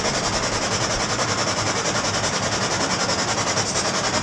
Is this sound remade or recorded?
recorded